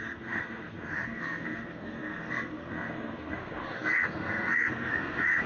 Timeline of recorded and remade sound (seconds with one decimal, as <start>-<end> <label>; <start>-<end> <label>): 0.0-5.5 remade